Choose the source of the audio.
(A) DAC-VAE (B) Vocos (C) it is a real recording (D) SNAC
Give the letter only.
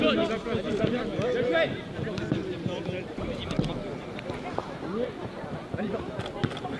C